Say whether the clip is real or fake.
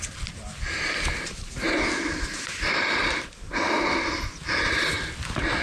real